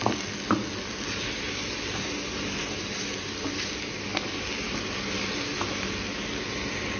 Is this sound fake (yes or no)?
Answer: no